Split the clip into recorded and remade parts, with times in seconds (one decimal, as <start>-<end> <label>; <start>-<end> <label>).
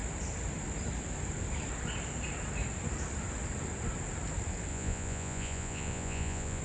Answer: 0.0-4.7 recorded; 4.7-6.6 remade